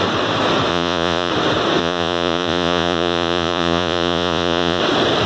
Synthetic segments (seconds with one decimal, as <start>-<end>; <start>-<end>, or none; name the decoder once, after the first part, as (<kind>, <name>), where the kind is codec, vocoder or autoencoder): 0.7-1.3 (vocoder, Vocos); 1.8-4.8